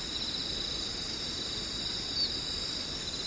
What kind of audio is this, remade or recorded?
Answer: recorded